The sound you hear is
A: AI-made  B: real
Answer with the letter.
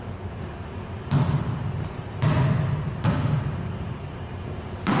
B